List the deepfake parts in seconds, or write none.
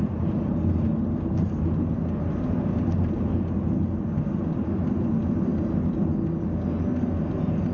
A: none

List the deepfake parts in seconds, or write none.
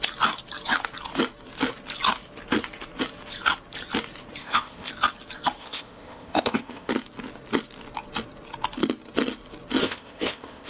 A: 4.4-4.9 (codec, ZipCodec); 5.6-6.9; 9.8-10.7